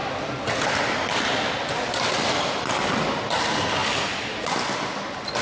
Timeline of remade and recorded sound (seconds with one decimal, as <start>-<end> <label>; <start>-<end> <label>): 0.0-5.4 recorded